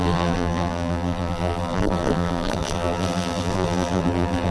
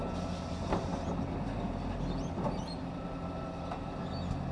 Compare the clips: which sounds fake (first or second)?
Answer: first